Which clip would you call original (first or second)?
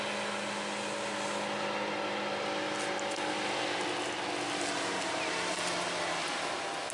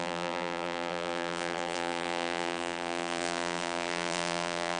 first